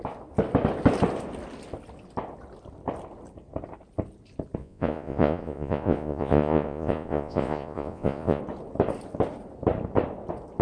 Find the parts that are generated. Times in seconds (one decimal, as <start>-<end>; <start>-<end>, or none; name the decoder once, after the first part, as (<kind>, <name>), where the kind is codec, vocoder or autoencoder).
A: 4.6-8.4 (vocoder, Vocos)

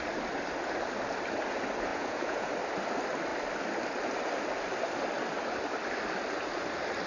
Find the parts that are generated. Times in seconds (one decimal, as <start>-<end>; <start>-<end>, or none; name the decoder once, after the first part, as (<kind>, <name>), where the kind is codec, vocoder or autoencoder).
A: 1.9-2.5 (vocoder, Vocos)

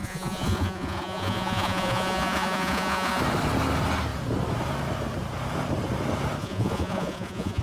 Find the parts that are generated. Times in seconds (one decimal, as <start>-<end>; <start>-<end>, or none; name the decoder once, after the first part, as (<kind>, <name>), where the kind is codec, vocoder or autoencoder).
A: 0.0-3.2 (vocoder, Vocos); 6.4-7.6